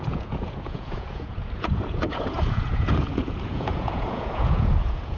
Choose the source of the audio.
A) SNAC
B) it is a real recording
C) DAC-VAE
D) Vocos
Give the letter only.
D